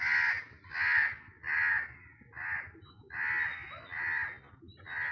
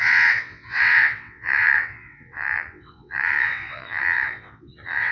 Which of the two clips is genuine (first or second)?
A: first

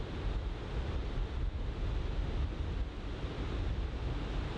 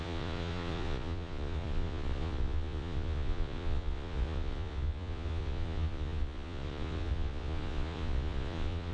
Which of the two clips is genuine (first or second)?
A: first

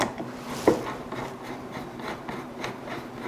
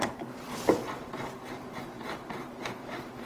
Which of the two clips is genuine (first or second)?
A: first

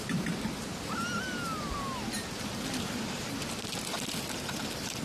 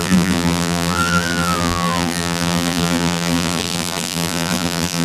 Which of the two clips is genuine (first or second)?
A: first